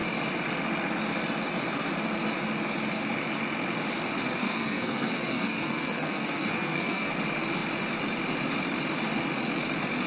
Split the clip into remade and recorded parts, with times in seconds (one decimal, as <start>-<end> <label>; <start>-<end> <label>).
0.0-4.4 recorded; 4.4-7.1 remade; 7.1-10.1 recorded